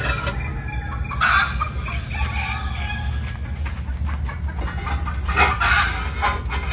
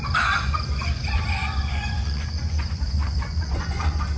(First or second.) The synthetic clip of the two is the second